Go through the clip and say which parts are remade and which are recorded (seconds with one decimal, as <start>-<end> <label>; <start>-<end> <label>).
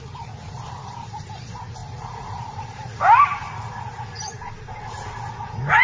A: 0.0-5.8 recorded